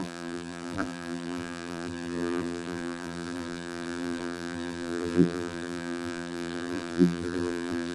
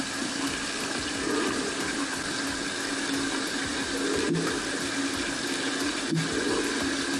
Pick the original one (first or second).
second